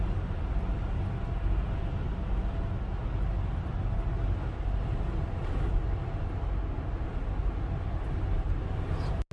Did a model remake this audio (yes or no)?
no